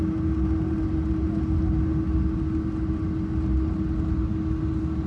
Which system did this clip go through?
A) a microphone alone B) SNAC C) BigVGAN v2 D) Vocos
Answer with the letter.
A